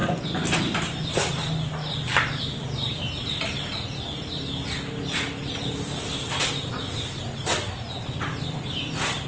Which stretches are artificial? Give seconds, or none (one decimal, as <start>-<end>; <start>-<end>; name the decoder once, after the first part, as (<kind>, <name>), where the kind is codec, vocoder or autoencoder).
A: none